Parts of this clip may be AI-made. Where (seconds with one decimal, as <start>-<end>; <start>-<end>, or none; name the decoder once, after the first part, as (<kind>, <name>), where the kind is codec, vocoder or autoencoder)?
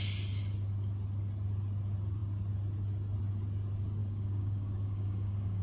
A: 4.0-5.6 (codec, DAC)